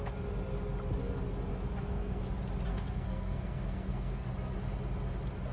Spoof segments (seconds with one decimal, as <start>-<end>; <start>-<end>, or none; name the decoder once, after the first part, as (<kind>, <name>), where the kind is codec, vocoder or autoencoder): 1.5-2.2 (codec, SNAC); 2.7-4.3